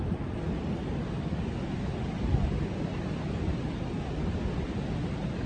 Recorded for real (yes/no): yes